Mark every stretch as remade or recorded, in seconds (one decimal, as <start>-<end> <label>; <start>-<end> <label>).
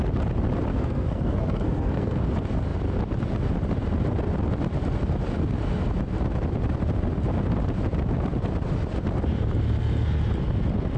0.0-0.7 recorded; 0.7-2.2 remade; 2.2-11.0 recorded